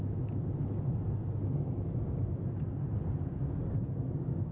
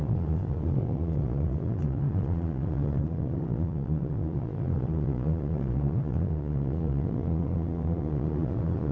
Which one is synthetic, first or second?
second